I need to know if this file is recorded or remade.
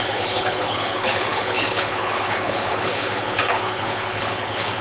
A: remade